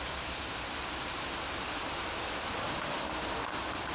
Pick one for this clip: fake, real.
real